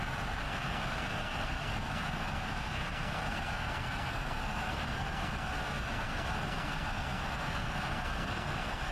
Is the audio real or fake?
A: fake